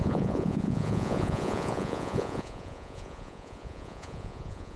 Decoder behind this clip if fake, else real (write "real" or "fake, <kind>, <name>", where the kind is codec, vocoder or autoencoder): fake, vocoder, Vocos